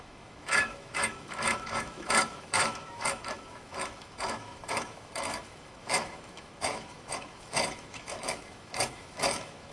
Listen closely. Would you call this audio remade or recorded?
remade